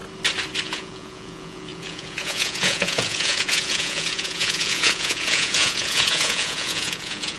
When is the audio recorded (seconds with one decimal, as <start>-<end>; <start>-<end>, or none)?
0.0-0.6